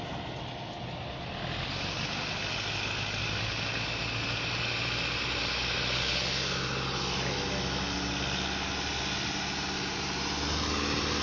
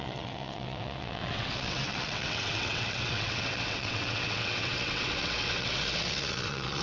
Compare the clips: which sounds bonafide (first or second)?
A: first